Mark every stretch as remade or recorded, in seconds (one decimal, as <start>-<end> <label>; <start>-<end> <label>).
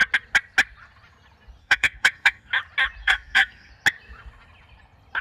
0.0-1.6 recorded; 1.6-2.5 remade; 2.5-3.0 recorded; 3.0-3.7 remade; 3.7-5.2 recorded